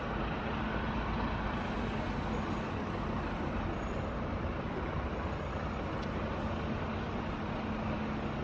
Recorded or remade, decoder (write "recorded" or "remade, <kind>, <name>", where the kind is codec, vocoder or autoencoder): recorded